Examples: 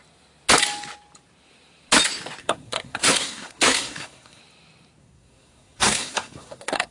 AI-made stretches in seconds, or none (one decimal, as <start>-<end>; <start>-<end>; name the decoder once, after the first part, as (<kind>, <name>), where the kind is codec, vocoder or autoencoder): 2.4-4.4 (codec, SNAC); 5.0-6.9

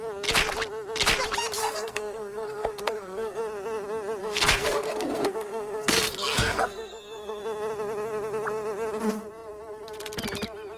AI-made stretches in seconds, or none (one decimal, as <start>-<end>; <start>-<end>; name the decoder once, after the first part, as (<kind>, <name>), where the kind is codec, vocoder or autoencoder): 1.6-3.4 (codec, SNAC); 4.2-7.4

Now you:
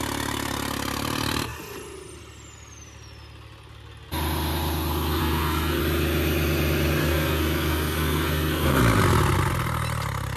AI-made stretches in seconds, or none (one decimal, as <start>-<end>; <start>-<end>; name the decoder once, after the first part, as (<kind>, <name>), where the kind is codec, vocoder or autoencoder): 5.2-5.8 (codec, SNAC); 7.0-8.8

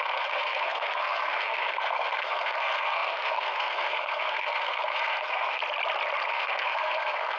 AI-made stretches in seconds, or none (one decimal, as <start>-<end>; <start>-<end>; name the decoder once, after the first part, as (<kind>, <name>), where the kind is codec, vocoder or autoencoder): 0.0-5.6 (codec, SNAC); 6.3-7.4

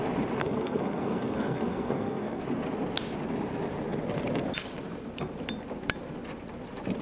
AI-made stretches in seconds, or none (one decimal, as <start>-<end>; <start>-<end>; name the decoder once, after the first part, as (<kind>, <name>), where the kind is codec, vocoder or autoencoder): 0.4-2.4 (codec, SNAC)

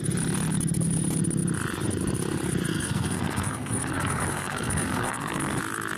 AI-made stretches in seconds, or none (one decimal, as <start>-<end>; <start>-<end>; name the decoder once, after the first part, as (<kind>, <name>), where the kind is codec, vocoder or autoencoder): 2.7-5.6 (codec, SNAC)